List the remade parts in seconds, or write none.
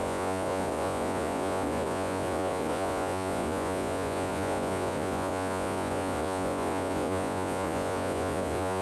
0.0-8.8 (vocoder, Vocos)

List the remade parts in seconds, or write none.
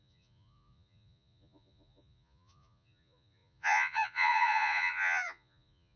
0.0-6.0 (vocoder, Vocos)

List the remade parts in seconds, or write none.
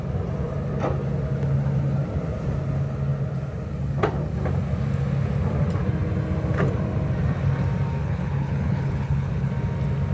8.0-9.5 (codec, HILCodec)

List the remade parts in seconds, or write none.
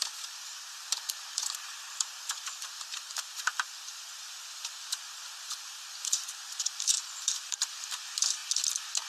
0.0-8.4 (vocoder, BigVGAN v2)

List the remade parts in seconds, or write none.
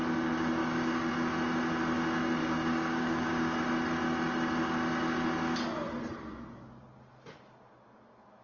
0.6-1.1 (codec, DAC); 2.4-3.6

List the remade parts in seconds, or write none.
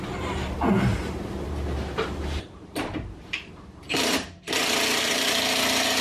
0.9-4.5 (vocoder, BigVGAN v2)